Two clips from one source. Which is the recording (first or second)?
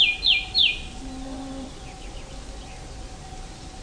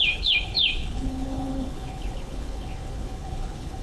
first